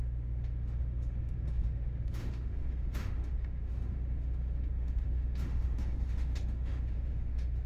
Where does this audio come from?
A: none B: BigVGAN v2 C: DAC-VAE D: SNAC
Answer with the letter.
C